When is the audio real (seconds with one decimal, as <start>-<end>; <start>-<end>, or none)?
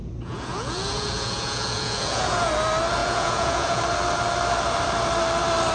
2.5-3.0; 3.8-5.7